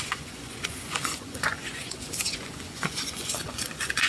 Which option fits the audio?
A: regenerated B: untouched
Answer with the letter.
A